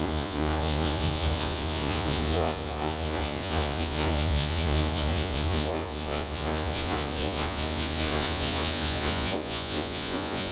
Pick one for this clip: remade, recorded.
remade